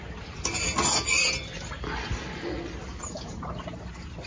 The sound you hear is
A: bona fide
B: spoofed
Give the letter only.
A